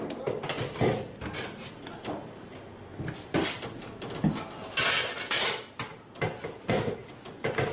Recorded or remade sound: recorded